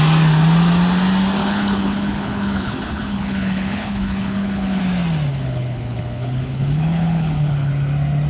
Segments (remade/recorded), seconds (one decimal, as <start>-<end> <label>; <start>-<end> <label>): 0.0-1.4 recorded; 1.4-4.8 remade; 4.8-5.3 recorded; 5.3-7.7 remade; 7.7-8.3 recorded